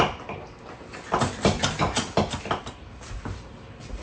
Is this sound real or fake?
real